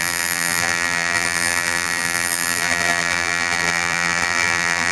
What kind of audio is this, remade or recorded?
remade